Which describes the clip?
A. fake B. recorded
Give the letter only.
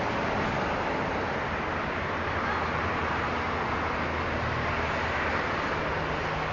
B